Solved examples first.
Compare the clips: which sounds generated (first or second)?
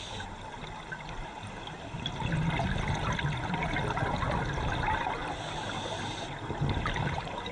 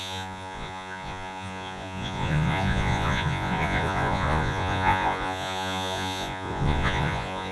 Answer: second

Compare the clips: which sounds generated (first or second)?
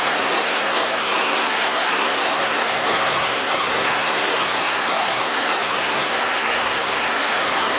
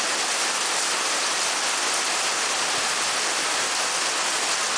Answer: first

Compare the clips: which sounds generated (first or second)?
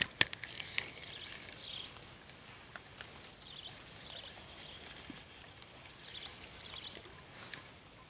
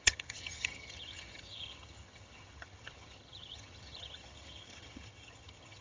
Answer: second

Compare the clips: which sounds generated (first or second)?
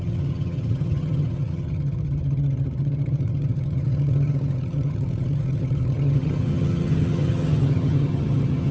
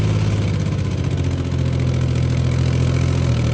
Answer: first